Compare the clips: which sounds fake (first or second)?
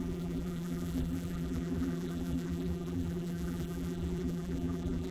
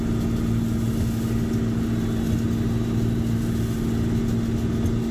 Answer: first